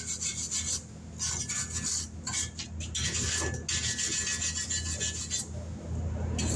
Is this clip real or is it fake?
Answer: real